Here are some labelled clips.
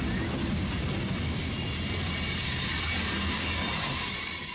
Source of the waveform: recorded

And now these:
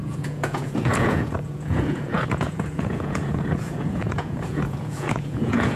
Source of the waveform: remade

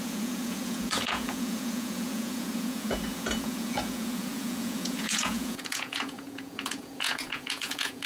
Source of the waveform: remade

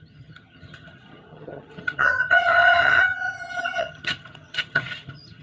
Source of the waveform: remade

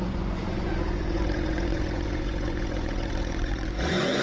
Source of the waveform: remade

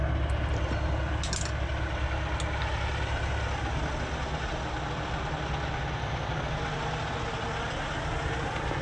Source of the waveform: recorded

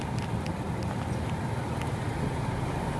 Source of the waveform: recorded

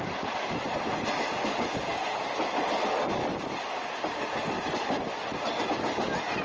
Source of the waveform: recorded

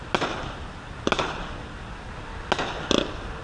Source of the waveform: recorded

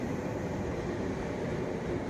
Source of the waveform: remade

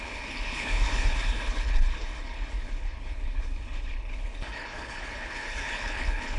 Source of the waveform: remade